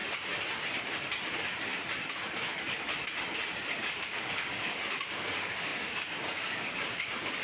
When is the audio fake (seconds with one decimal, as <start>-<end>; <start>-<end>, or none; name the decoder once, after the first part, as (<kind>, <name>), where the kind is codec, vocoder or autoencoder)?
3.8-7.4 (codec, DAC)

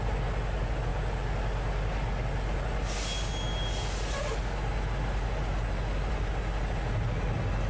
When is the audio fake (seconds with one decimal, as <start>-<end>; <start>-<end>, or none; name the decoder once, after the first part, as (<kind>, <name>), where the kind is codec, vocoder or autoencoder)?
none